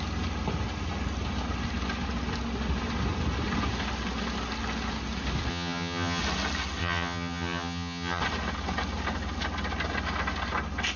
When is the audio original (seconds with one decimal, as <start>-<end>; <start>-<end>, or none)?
0.0-5.5; 6.2-6.8; 8.2-11.0